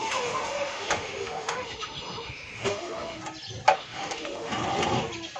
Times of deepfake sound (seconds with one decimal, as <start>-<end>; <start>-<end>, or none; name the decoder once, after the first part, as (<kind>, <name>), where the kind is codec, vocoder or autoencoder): 0.0-3.2 (autoencoder, DAC-VAE); 3.7-4.5